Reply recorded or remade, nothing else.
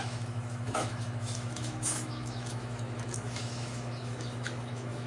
remade